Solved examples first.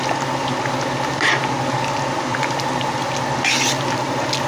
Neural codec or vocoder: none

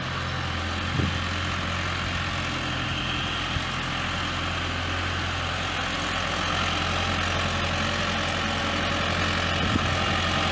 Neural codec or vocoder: none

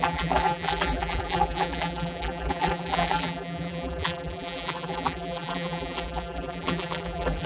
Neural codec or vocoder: vocoder, BigVGAN v2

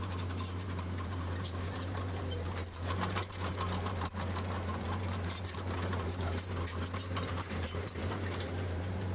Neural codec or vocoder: vocoder, BigVGAN v2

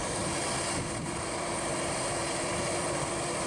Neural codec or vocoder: vocoder, BigVGAN v2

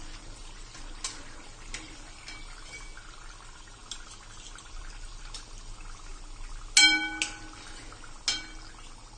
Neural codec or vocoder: none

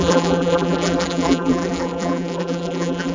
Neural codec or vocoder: vocoder, BigVGAN v2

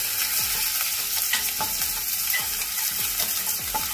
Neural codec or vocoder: none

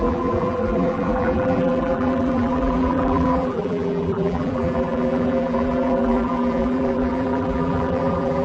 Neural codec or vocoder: vocoder, BigVGAN v2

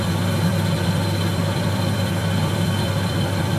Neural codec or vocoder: vocoder, BigVGAN v2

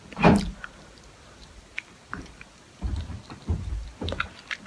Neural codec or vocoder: vocoder, BigVGAN v2